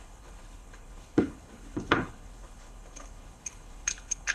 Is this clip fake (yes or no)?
yes